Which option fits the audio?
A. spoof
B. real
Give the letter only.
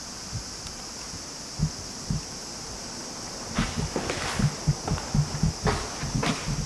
B